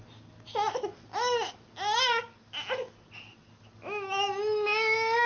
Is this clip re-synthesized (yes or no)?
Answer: no